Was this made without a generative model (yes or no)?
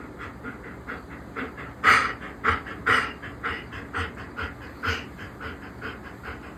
yes